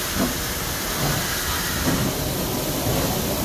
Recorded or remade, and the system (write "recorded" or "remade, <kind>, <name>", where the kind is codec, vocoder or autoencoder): recorded